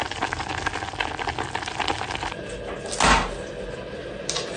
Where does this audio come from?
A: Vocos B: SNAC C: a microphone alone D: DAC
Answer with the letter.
C